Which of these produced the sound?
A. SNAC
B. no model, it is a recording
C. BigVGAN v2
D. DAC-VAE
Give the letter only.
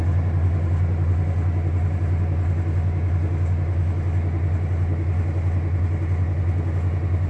B